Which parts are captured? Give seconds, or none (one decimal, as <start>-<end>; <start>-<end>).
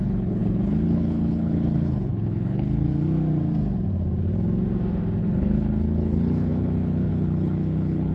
2.9-5.2